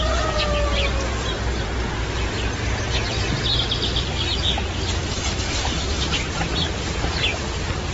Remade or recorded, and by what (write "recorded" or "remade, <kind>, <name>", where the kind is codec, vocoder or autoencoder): recorded